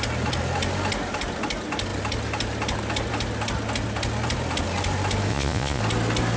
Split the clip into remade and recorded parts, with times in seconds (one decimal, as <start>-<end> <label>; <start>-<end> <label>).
0.0-5.3 recorded; 5.3-5.8 remade; 5.8-6.4 recorded